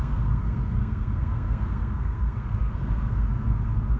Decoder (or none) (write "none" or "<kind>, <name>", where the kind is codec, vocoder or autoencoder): codec, SNAC